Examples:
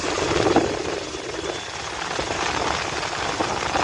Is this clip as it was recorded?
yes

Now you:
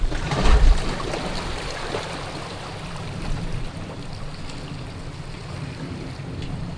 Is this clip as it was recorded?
yes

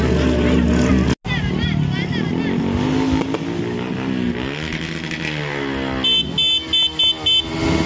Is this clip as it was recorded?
yes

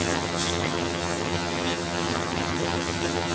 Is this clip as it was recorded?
no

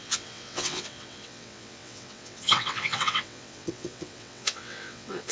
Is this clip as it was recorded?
no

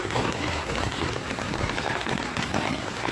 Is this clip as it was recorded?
no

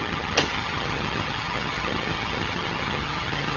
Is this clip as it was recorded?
no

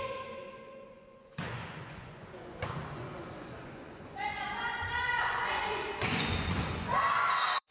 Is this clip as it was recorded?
no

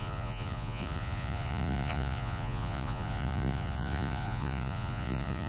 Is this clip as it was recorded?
no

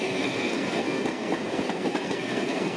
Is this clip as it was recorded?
no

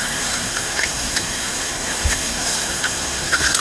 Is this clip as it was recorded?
no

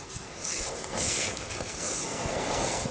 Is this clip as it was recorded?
no